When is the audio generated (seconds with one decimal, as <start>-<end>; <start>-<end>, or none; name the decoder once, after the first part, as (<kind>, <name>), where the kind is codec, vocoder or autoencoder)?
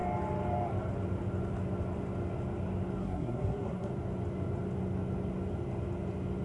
3.0-3.9 (codec, SNAC)